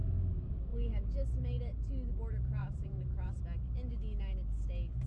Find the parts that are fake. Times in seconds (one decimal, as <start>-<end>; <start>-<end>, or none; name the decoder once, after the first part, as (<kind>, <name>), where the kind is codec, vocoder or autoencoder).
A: 2.6-3.4 (vocoder, BigVGAN v2)